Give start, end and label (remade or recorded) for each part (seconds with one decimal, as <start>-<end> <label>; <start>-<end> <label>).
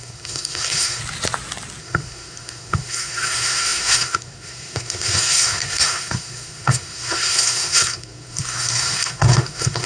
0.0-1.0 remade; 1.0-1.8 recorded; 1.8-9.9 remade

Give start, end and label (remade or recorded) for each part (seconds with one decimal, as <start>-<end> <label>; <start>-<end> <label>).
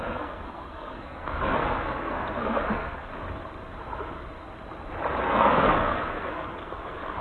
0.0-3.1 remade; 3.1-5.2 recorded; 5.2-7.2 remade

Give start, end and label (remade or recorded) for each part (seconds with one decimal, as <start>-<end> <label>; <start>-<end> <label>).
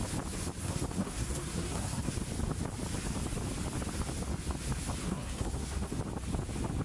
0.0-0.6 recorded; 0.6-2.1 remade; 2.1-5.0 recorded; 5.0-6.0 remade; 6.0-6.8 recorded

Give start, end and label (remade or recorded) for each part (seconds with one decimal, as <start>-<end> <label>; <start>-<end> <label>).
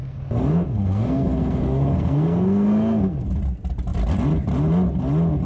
0.0-3.3 remade; 3.3-5.5 recorded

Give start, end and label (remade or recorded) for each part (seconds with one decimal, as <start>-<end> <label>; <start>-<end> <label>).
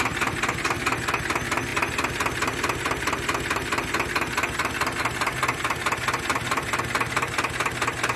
0.0-8.2 recorded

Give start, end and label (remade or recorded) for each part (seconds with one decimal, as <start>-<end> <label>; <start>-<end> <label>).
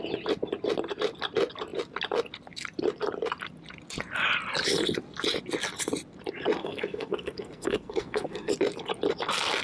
0.0-6.6 recorded; 6.6-8.5 remade; 8.5-9.6 recorded